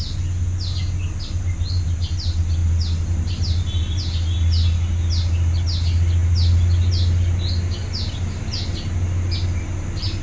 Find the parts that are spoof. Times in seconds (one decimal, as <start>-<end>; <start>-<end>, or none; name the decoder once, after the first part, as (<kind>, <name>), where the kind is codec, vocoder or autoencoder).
none